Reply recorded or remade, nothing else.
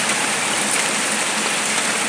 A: recorded